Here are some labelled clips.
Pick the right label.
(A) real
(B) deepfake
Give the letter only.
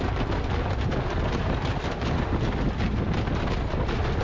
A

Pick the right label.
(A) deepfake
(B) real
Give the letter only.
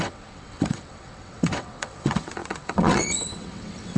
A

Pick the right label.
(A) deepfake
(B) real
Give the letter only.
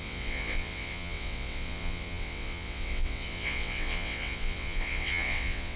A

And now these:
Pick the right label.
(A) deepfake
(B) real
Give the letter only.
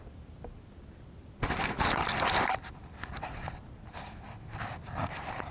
B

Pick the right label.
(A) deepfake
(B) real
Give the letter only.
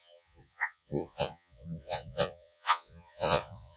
A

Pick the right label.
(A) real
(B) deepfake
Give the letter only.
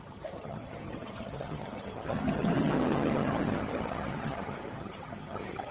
B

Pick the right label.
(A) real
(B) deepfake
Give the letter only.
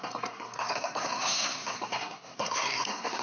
B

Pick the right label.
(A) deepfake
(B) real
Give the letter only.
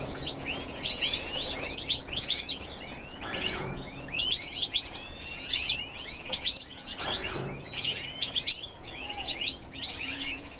A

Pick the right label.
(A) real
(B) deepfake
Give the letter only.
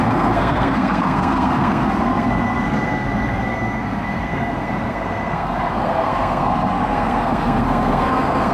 B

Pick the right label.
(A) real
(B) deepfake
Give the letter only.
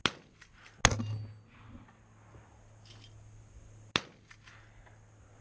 A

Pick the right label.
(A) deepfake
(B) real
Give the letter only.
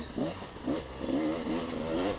B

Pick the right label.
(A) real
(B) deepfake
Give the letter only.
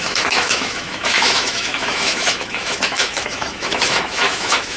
B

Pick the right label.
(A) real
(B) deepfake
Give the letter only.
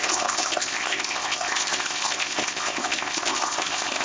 B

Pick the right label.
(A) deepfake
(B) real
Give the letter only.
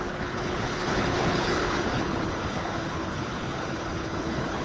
A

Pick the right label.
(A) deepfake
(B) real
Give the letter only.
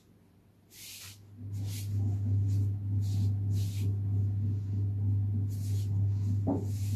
B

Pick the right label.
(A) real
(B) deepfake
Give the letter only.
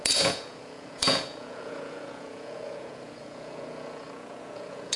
B